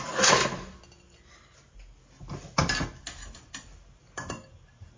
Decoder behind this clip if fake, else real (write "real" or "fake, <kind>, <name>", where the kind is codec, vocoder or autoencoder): real